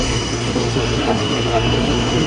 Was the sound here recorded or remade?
remade